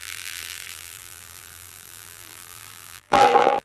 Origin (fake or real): fake